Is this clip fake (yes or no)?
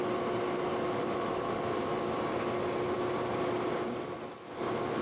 no